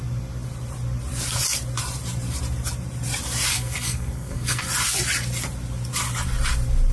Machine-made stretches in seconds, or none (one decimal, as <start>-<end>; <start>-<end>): 3.5-4.6